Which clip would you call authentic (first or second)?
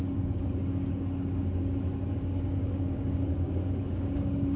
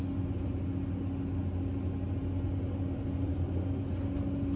second